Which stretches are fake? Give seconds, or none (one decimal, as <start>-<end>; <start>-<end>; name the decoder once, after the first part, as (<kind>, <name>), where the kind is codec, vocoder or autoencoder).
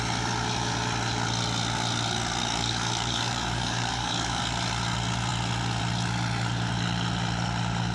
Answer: 2.4-4.4 (codec, DAC)